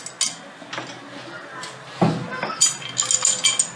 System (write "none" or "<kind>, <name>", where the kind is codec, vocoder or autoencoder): none